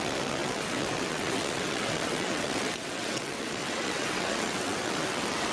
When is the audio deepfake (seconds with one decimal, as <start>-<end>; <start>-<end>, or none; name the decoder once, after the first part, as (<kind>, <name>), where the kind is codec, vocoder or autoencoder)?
0.0-5.5 (vocoder, WaveNeXt)